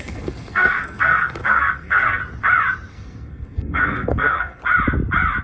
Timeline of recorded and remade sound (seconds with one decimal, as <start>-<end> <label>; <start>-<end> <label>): 0.0-2.2 remade; 2.2-2.9 recorded; 2.9-4.6 remade; 4.6-5.4 recorded